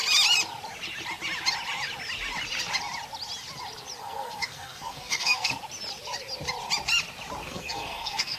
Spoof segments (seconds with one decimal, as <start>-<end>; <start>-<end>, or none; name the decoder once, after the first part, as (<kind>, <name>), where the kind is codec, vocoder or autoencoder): 4.0-5.5 (codec, SNAC); 7.4-8.4